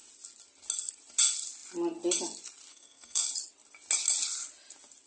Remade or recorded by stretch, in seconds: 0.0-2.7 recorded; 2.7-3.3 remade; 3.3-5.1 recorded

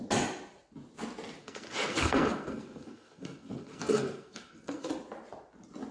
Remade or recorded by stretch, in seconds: 0.0-1.4 recorded; 1.4-4.9 remade; 4.9-5.9 recorded

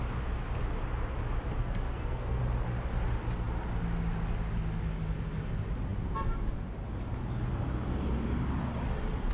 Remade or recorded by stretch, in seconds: 0.0-1.6 recorded; 1.6-2.4 remade; 2.4-9.3 recorded

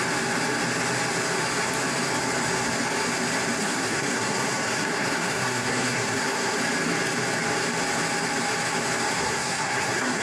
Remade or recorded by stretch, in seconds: 0.0-3.6 recorded; 3.6-6.6 remade; 6.6-9.2 recorded; 9.2-10.2 remade